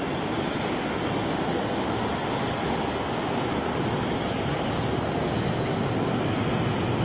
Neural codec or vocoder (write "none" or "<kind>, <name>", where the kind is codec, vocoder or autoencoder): none